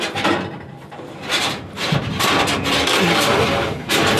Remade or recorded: remade